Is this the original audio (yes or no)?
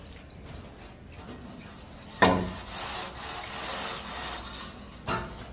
yes